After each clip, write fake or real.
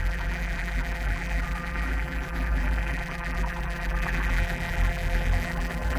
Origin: fake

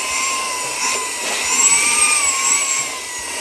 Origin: fake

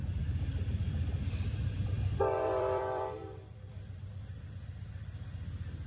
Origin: fake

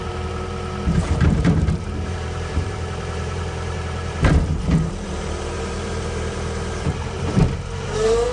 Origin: fake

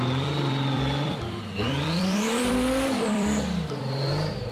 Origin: fake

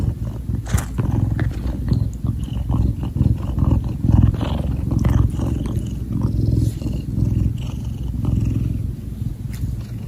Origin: real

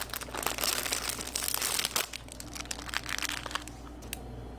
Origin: real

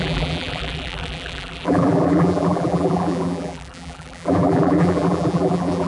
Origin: fake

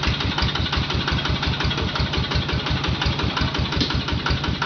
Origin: real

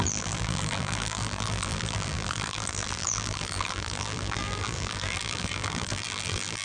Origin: fake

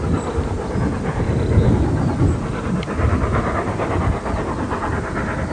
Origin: real